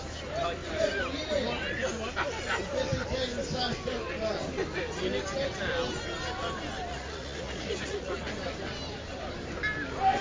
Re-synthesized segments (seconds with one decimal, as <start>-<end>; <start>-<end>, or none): 6.9-8.3